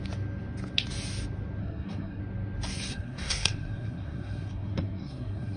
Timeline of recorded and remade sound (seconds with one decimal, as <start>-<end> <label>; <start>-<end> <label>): 0.0-1.6 recorded; 1.6-2.2 remade; 2.2-2.9 recorded; 2.9-5.6 remade